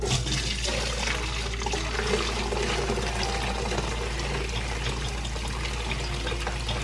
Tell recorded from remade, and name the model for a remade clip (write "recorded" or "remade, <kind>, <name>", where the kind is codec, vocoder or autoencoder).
recorded